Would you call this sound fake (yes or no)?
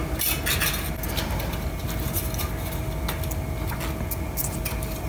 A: no